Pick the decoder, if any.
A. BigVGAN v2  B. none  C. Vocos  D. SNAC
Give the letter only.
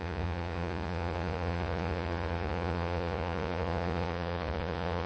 C